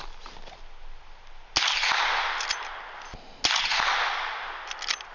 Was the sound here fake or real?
real